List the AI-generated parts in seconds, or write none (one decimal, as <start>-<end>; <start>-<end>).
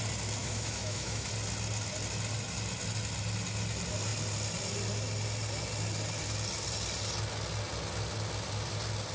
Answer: 0.4-1.3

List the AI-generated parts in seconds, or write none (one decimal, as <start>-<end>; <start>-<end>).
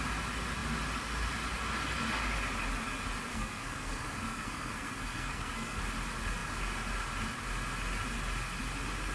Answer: 3.3-5.8